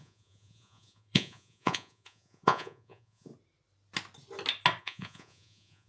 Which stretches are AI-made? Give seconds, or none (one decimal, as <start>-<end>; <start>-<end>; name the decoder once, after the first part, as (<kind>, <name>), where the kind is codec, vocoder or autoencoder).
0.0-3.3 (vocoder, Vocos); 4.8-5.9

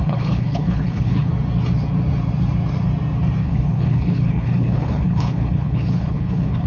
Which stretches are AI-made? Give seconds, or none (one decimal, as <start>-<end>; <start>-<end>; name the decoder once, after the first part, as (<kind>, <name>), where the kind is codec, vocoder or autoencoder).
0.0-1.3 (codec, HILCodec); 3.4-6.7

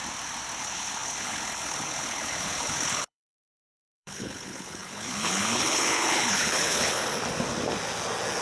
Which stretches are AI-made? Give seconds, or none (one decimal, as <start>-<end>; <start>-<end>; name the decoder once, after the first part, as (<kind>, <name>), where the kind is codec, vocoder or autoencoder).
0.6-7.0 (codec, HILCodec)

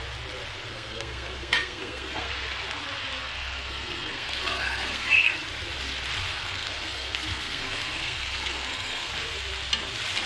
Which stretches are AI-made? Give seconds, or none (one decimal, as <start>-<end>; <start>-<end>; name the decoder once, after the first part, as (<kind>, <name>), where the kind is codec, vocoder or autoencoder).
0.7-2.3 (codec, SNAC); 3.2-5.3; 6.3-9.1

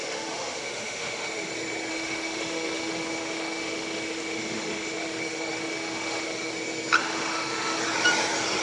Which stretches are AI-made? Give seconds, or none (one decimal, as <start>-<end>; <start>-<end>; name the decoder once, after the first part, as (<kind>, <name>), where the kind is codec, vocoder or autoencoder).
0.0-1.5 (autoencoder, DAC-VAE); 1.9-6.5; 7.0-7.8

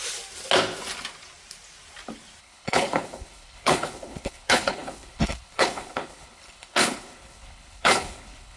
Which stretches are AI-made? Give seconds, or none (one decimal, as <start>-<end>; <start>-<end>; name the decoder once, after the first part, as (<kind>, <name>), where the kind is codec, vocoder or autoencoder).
2.4-8.6 (codec, HILCodec)

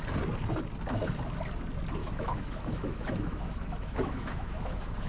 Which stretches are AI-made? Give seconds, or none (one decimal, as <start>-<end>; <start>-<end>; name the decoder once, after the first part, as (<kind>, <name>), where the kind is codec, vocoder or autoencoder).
2.0-5.1 (autoencoder, DAC-VAE)

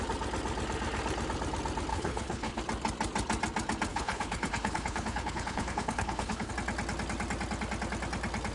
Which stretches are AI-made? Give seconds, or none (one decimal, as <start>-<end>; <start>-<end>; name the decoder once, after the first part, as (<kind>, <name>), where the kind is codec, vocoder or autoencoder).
1.9-2.6 (codec, HILCodec); 3.9-6.5